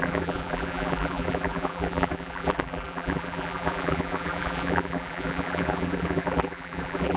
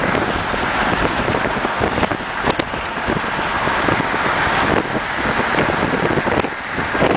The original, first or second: second